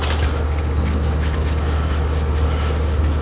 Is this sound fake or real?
real